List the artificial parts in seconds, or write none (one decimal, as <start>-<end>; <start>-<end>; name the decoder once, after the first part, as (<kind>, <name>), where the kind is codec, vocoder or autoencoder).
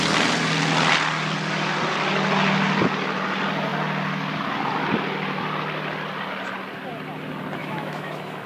7.6-8.5 (autoencoder, DAC-VAE)